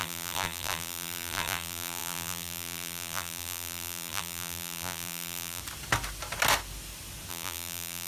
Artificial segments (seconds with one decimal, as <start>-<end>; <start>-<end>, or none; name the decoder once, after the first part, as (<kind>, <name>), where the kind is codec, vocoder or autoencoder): 0.0-5.6 (vocoder, BigVGAN v2); 7.3-8.1